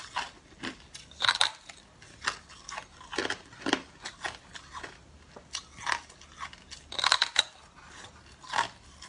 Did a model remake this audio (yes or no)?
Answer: no